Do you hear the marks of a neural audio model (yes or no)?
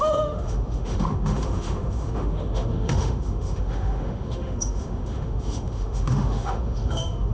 yes